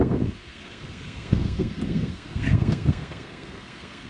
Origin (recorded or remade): remade